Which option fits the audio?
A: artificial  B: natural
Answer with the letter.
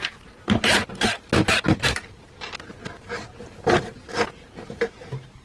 A